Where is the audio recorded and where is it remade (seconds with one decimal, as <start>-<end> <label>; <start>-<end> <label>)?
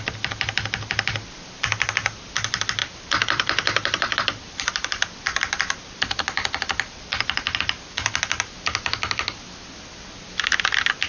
0.0-2.8 recorded; 2.8-7.6 remade; 7.6-11.1 recorded